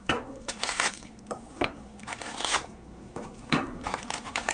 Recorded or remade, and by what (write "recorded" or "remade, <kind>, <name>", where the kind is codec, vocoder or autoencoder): remade, codec, SNAC